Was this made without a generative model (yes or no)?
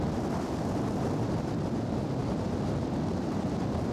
yes